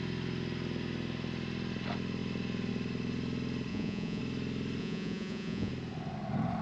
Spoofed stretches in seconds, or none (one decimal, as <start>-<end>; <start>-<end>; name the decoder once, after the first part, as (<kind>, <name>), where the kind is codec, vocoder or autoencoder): 3.7-4.2 (vocoder, Vocos); 4.8-5.7